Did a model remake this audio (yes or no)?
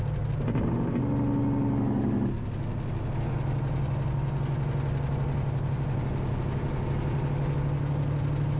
no